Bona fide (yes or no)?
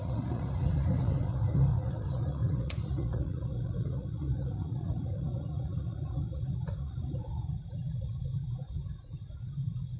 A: no